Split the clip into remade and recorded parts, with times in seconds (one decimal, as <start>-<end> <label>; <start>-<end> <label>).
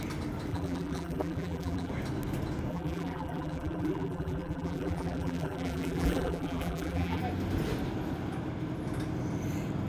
0.0-0.5 recorded; 0.5-1.9 remade; 1.9-2.7 recorded; 2.7-7.2 remade; 7.2-9.9 recorded